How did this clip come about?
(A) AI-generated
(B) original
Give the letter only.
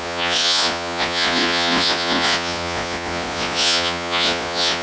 A